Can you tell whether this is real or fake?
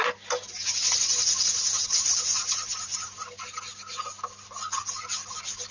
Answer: real